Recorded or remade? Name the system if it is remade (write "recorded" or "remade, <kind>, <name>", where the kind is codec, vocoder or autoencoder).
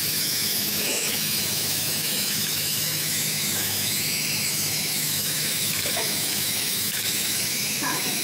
remade, autoencoder, DAC-VAE